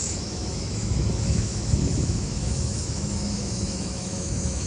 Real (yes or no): no